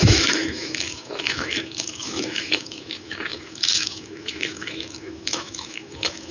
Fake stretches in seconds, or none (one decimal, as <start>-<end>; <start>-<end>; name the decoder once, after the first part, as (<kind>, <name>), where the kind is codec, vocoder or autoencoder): 0.0-6.3 (autoencoder, DAC-VAE)

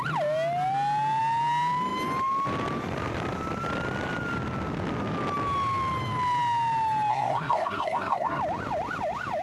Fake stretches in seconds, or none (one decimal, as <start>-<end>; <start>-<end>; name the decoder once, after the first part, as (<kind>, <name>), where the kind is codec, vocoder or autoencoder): 7.1-8.4 (codec, SNAC)

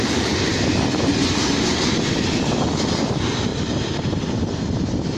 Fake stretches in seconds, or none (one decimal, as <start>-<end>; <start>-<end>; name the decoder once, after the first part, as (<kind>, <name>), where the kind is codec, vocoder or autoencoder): none

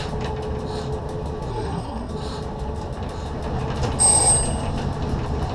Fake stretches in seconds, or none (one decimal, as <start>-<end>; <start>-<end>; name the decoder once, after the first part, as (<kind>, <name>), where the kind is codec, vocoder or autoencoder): 1.5-2.1 (codec, SNAC)

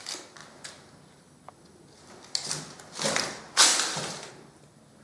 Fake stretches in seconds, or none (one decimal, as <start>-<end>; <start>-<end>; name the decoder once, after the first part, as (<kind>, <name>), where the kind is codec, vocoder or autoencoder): 3.7-4.3 (vocoder, BigVGAN v2)